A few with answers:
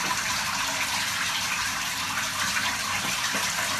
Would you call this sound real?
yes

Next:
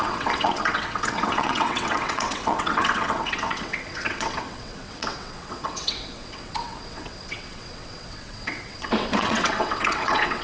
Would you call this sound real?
no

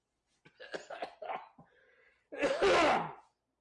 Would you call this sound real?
yes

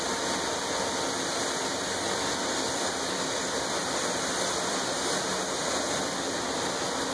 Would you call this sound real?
yes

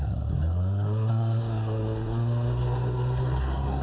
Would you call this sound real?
no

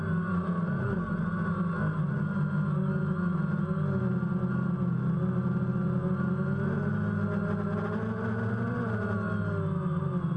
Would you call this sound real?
yes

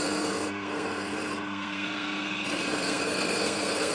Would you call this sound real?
no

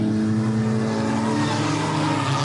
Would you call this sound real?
yes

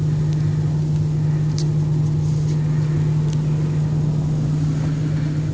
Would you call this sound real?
yes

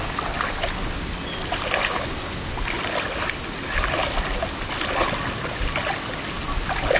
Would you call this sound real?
yes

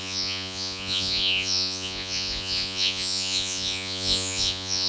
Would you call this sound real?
no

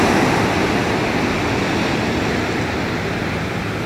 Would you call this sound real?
yes